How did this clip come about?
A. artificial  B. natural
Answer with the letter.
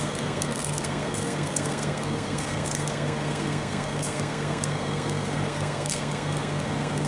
A